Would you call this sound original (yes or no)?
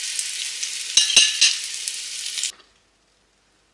yes